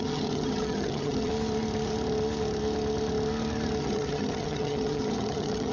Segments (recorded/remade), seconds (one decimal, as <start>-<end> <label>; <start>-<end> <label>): 0.0-1.3 remade; 1.3-3.8 recorded; 3.8-5.7 remade